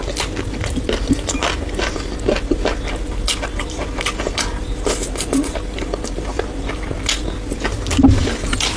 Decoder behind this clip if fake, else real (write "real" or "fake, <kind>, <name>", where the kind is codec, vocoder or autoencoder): real